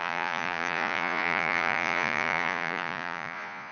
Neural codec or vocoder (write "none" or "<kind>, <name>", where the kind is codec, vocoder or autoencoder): vocoder, Vocos